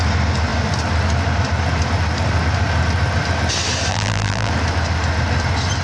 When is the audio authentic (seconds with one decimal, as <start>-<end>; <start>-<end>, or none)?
0.0-3.9; 4.5-5.8